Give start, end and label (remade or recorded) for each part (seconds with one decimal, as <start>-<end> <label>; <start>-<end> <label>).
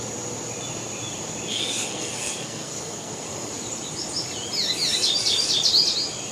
0.0-1.5 recorded; 1.5-3.5 remade; 3.5-6.3 recorded